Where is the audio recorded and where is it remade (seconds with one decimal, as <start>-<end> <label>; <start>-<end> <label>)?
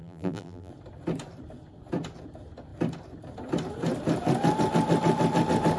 0.0-0.7 remade; 0.7-5.8 recorded